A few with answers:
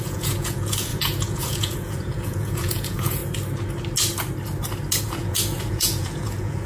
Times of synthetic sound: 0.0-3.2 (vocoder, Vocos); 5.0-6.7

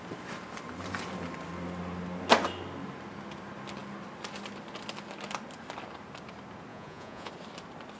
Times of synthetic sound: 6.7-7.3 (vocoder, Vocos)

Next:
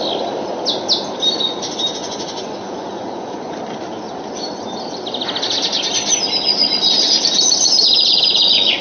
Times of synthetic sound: 2.0-3.5 (vocoder, Vocos); 8.0-8.8

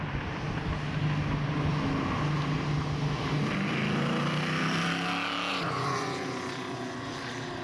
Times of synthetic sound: 5.5-7.1 (vocoder, Vocos)